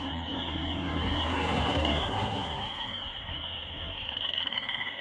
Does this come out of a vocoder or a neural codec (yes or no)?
yes